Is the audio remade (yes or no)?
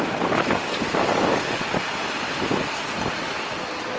no